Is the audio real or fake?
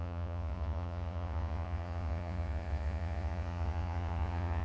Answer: fake